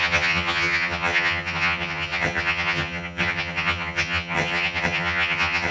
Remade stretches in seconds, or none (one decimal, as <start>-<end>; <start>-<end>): 0.0-5.7